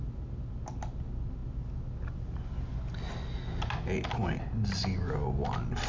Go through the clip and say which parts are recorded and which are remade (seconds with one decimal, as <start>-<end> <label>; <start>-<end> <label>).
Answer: 0.0-5.9 recorded